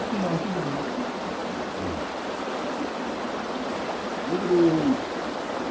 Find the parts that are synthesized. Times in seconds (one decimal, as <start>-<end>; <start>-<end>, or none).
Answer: none